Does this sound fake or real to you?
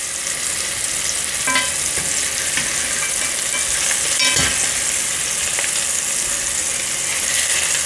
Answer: real